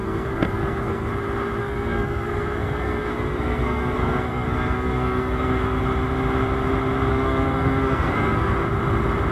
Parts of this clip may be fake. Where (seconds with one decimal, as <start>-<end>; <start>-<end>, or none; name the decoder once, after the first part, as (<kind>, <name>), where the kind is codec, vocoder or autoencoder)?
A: 0.0-1.1 (codec, SNAC); 1.6-5.8; 7.1-8.5